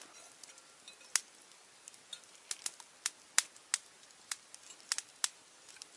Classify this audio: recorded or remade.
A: recorded